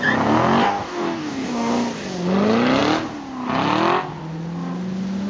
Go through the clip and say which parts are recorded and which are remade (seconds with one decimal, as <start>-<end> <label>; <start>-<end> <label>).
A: 0.0-0.6 recorded; 0.6-1.7 remade; 1.7-5.3 recorded